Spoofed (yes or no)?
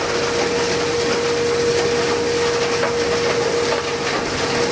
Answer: no